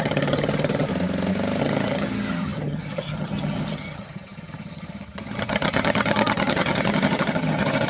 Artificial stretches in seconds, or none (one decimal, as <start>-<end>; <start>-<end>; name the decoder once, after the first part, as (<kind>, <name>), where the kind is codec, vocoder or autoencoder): 0.0-0.9 (vocoder, HiFi-GAN); 1.6-7.9